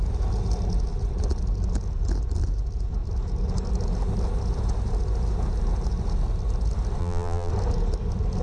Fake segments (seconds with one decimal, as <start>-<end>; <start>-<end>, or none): 7.0-7.5